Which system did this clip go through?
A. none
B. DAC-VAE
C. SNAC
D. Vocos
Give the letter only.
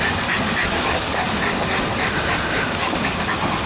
A